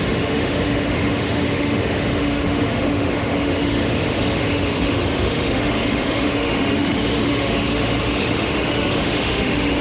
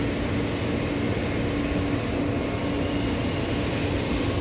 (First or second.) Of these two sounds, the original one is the second